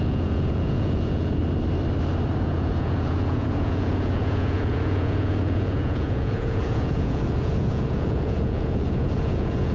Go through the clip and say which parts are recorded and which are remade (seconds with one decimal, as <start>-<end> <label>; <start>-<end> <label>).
0.0-1.4 remade; 1.4-2.4 recorded; 2.4-9.7 remade

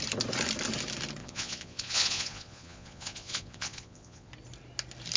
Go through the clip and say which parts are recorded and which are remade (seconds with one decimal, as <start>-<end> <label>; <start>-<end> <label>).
0.0-1.2 recorded; 1.2-4.3 remade; 4.3-5.2 recorded

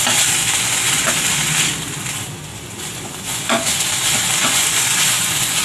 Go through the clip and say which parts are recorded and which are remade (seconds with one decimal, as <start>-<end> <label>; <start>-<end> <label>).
0.0-0.4 recorded; 0.4-1.1 remade; 1.1-2.5 recorded; 2.5-5.6 remade

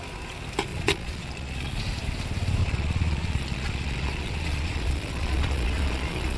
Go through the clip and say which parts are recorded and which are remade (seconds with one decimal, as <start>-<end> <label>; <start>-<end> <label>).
0.0-0.7 recorded; 0.7-1.8 remade; 1.8-2.6 recorded; 2.6-6.4 remade